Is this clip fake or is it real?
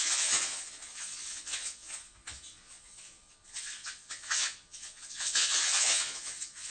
fake